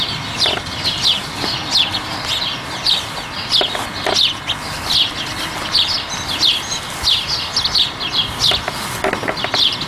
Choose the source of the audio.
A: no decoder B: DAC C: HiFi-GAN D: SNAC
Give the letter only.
A